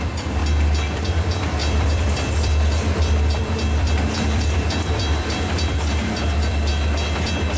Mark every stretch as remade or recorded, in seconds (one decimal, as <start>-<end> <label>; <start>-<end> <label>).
0.0-0.4 remade; 0.4-1.1 recorded; 1.1-6.7 remade; 6.7-7.6 recorded

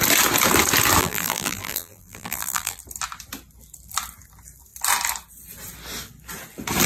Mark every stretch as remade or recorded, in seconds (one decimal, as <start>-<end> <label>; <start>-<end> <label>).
0.0-1.0 recorded; 1.0-2.8 remade; 2.8-6.9 recorded

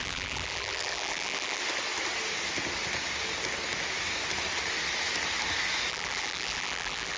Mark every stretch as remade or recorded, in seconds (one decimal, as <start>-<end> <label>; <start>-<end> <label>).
0.0-1.6 remade; 1.6-5.9 recorded; 5.9-7.2 remade

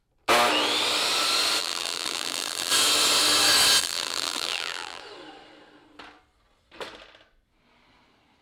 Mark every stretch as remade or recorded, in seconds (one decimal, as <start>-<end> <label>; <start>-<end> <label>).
0.0-1.6 recorded; 1.6-2.7 remade; 2.7-3.8 recorded; 3.8-5.0 remade; 5.0-8.4 recorded

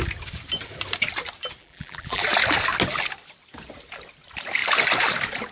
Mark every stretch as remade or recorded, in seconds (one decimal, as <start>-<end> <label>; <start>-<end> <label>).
0.0-1.6 recorded; 1.6-2.2 remade; 2.2-5.5 recorded